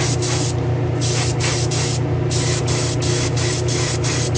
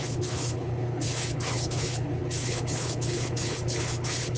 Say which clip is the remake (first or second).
second